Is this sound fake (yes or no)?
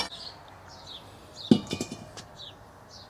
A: no